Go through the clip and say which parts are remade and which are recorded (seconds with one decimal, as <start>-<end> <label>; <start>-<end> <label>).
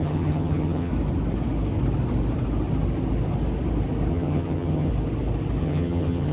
0.0-0.9 remade; 0.9-4.1 recorded; 4.1-4.9 remade; 4.9-5.6 recorded; 5.6-6.3 remade